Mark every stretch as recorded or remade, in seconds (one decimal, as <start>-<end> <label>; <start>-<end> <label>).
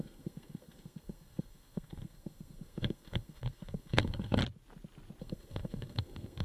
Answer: 0.0-4.4 remade; 4.4-5.2 recorded; 5.2-6.4 remade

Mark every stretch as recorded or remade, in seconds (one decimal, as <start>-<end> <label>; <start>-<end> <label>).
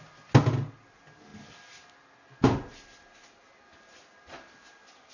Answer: 0.0-5.1 recorded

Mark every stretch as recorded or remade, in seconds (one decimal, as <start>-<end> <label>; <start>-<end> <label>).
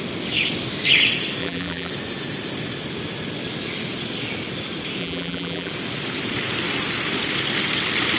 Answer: 0.0-1.4 recorded; 1.4-1.9 remade; 1.9-5.0 recorded; 5.0-5.7 remade; 5.7-8.2 recorded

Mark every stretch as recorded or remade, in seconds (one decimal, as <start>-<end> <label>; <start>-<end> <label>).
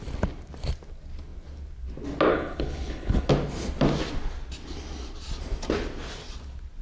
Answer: 0.0-2.3 recorded; 2.3-3.3 remade; 3.3-6.8 recorded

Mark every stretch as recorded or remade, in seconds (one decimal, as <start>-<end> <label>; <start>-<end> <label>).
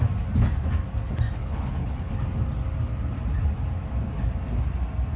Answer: 0.0-1.4 recorded; 1.4-2.1 remade; 2.1-5.2 recorded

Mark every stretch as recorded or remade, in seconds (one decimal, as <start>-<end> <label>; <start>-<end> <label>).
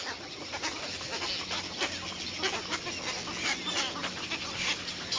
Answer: 0.0-5.2 recorded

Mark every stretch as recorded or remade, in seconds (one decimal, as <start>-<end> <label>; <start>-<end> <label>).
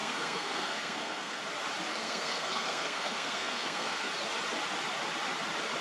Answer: 0.0-1.4 remade; 1.4-1.9 recorded; 1.9-4.1 remade; 4.1-5.8 recorded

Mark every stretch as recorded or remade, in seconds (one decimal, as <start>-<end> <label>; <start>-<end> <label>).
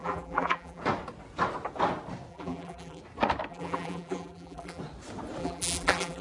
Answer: 0.0-0.8 remade; 0.8-2.3 recorded; 2.3-3.0 remade; 3.0-3.5 recorded; 3.5-4.8 remade; 4.8-5.4 recorded; 5.4-6.2 remade